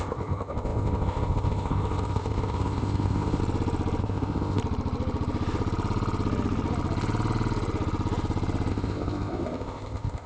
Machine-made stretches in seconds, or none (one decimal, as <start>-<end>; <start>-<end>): 0.0-3.4; 4.0-4.6; 8.7-10.3